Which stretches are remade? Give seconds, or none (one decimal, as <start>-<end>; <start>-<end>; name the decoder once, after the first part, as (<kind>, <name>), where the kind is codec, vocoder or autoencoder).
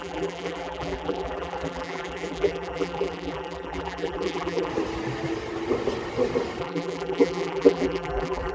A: 0.0-4.7 (vocoder, BigVGAN v2); 6.6-8.5